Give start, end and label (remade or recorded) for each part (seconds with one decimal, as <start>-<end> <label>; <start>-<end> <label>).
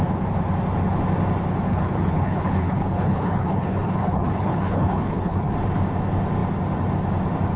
0.0-1.7 recorded; 1.7-5.5 remade; 5.5-7.6 recorded